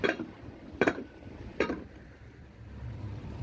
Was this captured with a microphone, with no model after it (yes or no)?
no